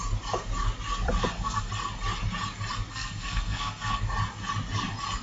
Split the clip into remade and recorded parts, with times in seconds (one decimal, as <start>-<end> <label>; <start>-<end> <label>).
0.0-1.2 recorded; 1.2-1.7 remade; 1.7-2.9 recorded; 2.9-4.0 remade; 4.0-5.2 recorded